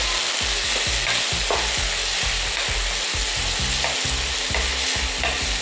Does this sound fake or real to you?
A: real